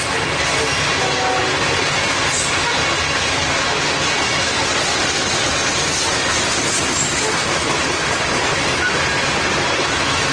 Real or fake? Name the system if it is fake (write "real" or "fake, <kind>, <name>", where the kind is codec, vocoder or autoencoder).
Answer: real